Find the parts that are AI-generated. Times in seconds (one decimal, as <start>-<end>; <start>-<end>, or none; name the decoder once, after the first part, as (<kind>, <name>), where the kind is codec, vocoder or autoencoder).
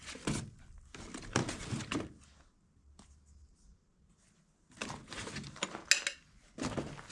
none